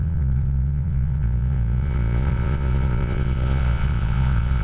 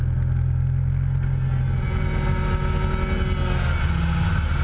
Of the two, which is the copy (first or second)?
first